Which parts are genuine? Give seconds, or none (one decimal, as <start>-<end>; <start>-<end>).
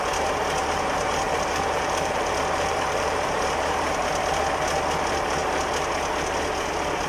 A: 0.0-0.6; 4.1-7.1